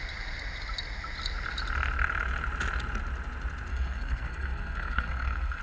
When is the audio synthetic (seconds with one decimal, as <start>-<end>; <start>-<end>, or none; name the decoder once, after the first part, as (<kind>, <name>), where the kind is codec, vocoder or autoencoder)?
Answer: 3.7-5.6 (codec, SNAC)